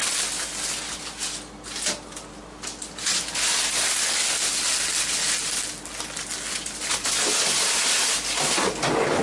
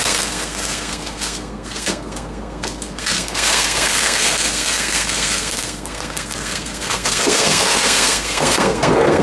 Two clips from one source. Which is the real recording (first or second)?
first